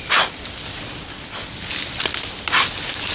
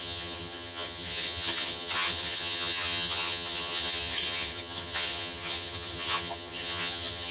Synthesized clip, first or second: second